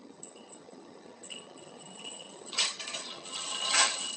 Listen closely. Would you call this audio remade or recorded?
remade